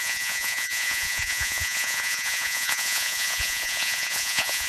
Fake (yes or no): yes